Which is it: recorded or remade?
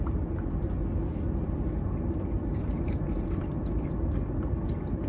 recorded